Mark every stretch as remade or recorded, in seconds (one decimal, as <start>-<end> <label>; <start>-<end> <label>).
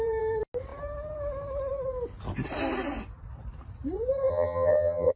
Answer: 0.0-4.3 recorded; 4.3-5.2 remade